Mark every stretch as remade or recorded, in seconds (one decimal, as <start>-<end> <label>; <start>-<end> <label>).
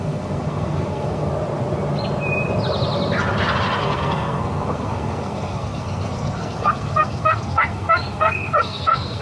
0.0-1.3 remade; 1.3-3.8 recorded; 3.8-9.2 remade